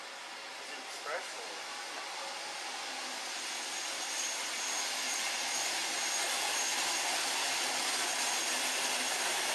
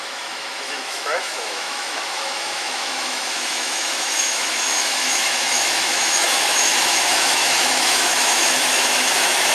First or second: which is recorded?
first